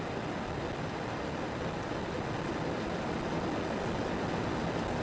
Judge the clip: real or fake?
real